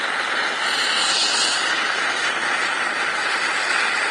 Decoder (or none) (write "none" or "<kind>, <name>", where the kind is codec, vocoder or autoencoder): none